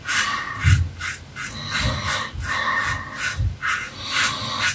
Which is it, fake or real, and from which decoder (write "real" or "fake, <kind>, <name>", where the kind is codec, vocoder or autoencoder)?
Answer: real